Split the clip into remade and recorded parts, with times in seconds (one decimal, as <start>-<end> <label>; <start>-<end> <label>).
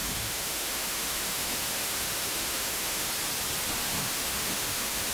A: 0.0-3.1 remade; 3.1-3.8 recorded; 3.8-5.1 remade